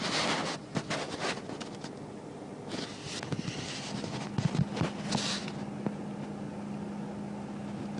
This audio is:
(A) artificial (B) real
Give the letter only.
B